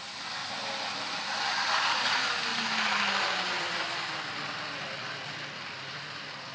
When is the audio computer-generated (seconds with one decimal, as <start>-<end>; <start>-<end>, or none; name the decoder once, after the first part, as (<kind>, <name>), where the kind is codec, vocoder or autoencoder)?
none